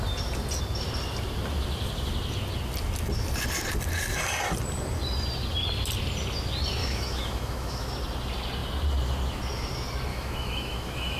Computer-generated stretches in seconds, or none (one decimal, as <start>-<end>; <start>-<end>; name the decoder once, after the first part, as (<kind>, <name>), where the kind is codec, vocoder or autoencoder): 6.8-7.9 (autoencoder, DAC-VAE); 10.1-11.2

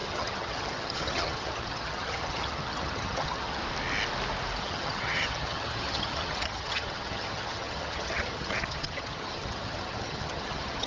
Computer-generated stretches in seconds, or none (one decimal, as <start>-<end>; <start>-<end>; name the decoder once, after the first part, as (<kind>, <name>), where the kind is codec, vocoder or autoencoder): 0.0-3.6 (vocoder, HiFi-GAN); 4.6-10.9

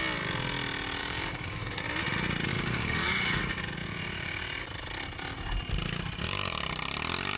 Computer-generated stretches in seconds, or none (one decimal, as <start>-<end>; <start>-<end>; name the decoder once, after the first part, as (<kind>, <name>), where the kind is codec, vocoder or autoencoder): 1.0-1.8 (codec, DAC); 2.5-3.4

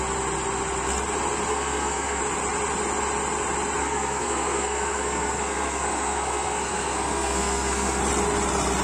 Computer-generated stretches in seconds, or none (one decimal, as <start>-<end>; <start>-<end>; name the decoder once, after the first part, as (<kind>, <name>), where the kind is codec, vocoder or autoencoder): 1.5-2.2 (codec, SNAC); 3.8-8.0

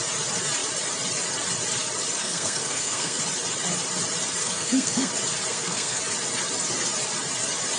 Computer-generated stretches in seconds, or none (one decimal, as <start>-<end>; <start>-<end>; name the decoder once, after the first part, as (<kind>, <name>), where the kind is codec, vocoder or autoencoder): 2.2-3.2 (codec, SNAC); 4.4-5.1; 5.5-6.0

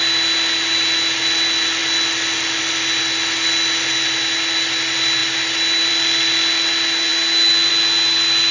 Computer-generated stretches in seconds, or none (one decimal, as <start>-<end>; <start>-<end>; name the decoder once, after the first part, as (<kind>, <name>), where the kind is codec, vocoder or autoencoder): none

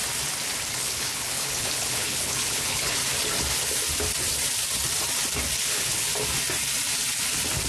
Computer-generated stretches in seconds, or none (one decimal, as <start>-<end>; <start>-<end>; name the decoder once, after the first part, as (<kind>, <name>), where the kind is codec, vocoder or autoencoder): 0.7-3.0 (codec, HILCodec); 5.6-6.1

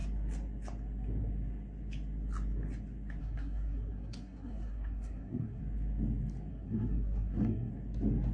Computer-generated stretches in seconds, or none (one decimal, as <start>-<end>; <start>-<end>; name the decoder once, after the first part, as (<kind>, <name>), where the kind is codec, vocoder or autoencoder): 3.2-5.6 (codec, SNAC); 6.5-7.7